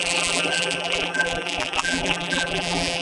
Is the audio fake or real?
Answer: fake